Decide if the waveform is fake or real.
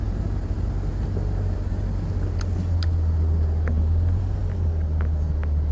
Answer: real